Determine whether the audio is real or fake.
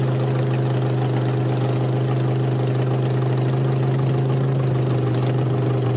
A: real